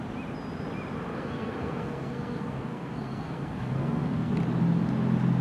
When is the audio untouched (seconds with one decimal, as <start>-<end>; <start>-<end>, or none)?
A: 0.0-1.1; 4.3-5.4